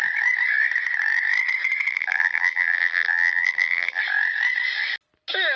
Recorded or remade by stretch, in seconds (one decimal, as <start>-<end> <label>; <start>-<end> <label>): 0.0-1.9 recorded; 1.9-4.0 remade; 4.0-5.6 recorded